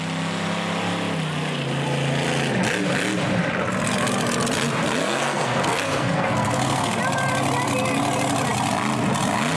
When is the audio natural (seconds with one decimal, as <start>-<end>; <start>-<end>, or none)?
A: 0.0-5.0; 7.0-9.6